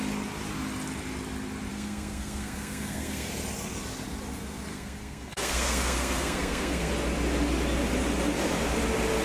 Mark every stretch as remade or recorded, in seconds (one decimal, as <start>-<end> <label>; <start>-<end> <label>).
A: 0.0-1.7 recorded; 1.7-3.3 remade; 3.3-4.7 recorded; 4.7-6.9 remade; 6.9-9.2 recorded